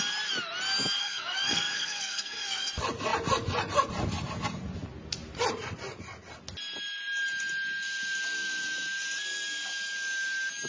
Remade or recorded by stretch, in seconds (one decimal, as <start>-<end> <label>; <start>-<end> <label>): 0.0-1.0 recorded; 1.0-2.7 remade; 2.7-10.7 recorded